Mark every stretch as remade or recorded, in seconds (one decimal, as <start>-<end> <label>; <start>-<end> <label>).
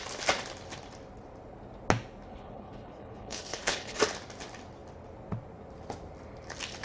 0.0-2.3 recorded; 2.3-4.0 remade; 4.0-6.8 recorded